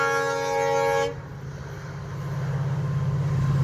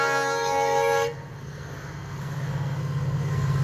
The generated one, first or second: second